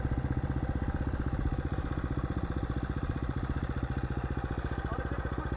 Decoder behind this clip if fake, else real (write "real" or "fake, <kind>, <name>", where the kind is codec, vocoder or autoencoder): real